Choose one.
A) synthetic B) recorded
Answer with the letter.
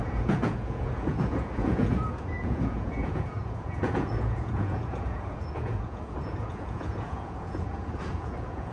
A